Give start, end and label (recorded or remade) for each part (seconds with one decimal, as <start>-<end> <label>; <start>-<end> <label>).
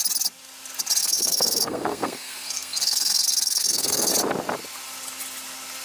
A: 0.0-1.0 recorded; 1.0-4.1 remade; 4.1-5.8 recorded